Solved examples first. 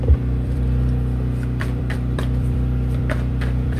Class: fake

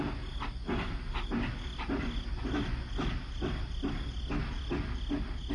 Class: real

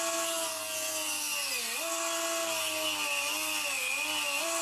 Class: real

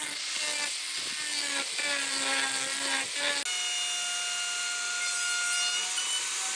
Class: real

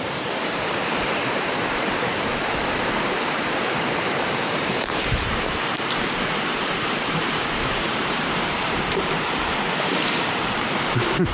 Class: fake